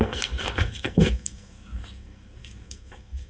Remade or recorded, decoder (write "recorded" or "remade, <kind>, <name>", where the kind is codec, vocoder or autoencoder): remade, codec, SNAC